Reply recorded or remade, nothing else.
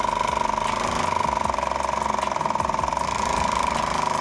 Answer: recorded